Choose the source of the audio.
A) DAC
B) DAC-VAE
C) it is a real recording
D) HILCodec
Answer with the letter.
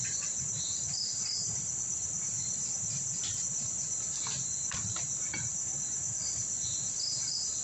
C